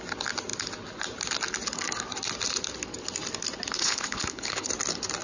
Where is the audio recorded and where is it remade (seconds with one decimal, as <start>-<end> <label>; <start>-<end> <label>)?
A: 0.0-3.8 recorded; 3.8-4.7 remade; 4.7-5.2 recorded